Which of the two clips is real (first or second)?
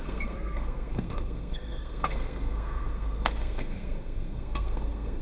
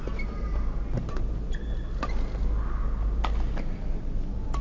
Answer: second